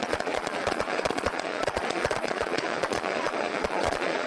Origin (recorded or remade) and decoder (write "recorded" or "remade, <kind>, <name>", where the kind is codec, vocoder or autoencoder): remade, vocoder, Vocos